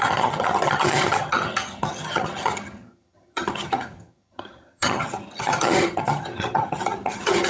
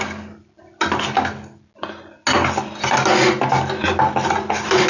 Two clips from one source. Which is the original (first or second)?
second